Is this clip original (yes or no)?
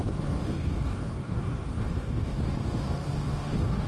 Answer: no